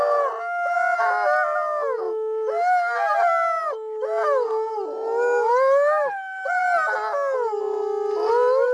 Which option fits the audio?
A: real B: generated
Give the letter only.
A